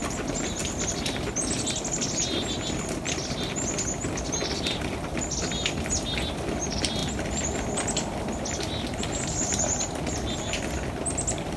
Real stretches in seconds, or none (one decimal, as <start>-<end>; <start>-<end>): 0.0-11.6